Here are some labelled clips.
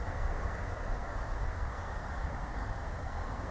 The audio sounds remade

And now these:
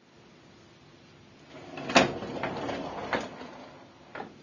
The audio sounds recorded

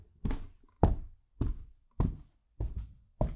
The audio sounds recorded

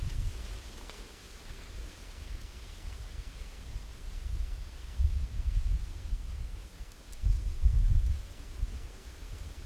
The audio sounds remade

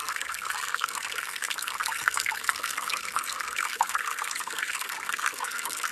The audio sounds remade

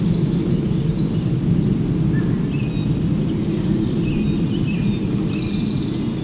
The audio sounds recorded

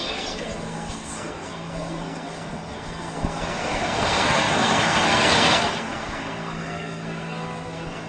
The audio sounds remade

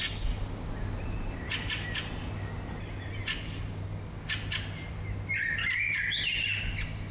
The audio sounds recorded